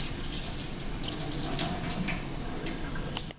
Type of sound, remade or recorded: recorded